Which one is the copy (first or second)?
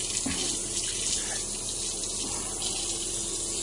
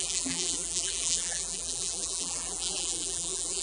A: second